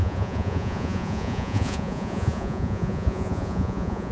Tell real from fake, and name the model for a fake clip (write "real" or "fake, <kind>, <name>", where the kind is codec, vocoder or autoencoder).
fake, vocoder, Vocos